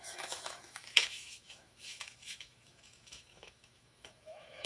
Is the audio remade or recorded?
remade